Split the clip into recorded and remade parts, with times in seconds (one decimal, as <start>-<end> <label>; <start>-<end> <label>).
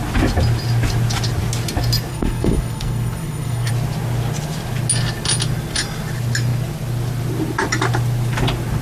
0.0-2.1 recorded; 2.1-3.7 remade; 3.7-8.8 recorded